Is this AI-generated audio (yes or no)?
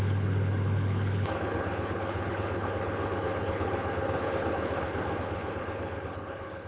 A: yes